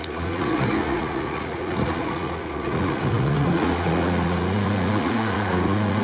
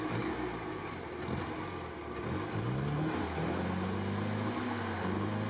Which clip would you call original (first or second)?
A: second